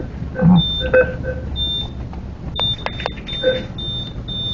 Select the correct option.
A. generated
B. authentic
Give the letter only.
B